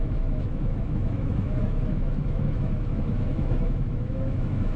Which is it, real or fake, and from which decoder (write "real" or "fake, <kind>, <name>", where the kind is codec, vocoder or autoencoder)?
fake, autoencoder, DAC-VAE